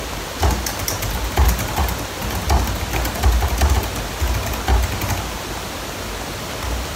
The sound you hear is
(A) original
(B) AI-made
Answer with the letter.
A